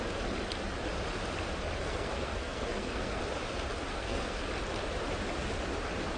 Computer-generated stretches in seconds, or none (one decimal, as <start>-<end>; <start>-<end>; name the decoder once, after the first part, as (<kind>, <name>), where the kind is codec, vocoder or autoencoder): 1.8-3.2 (codec, SNAC); 3.9-4.4